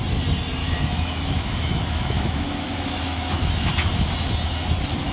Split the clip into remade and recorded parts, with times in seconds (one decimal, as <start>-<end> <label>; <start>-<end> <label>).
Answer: 0.0-0.6 recorded; 0.6-3.7 remade; 3.7-5.1 recorded